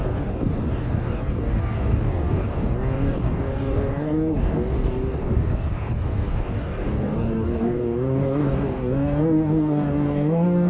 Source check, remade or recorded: remade